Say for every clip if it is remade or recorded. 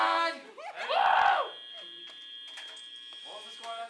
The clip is recorded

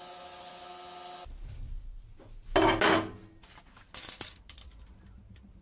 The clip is recorded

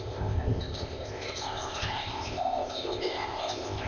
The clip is remade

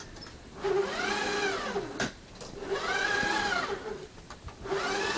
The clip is recorded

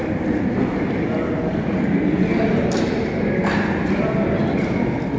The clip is recorded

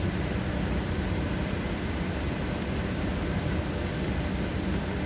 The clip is recorded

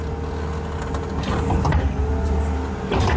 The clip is recorded